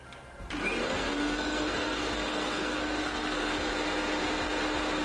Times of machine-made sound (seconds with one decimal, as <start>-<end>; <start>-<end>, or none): 0.8-3.5